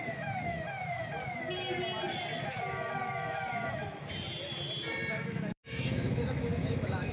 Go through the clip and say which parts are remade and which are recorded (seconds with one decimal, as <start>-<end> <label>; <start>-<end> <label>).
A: 0.0-0.8 remade; 0.8-5.1 recorded; 5.1-7.1 remade